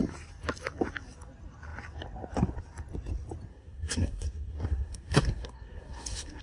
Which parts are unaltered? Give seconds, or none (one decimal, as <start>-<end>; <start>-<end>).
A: 0.0-3.5